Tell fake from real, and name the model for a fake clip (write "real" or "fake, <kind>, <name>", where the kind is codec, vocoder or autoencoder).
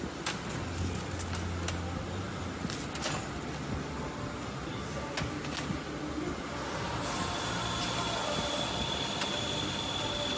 real